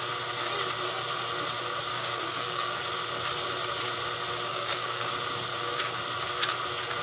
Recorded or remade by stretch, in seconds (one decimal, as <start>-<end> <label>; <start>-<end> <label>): 0.0-1.9 recorded; 1.9-2.9 remade; 2.9-4.5 recorded; 4.5-5.1 remade; 5.1-5.5 recorded; 5.5-6.0 remade; 6.0-7.0 recorded